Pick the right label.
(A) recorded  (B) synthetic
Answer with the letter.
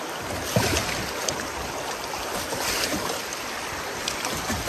A